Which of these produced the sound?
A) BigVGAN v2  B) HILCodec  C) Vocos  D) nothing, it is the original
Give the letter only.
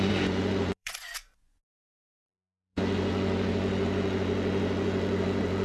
C